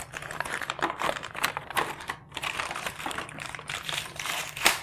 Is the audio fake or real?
fake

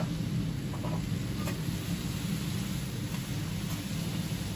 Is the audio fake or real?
real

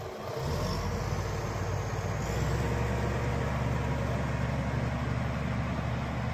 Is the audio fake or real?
real